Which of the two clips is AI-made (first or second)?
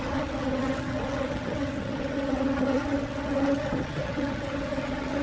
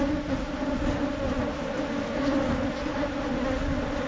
first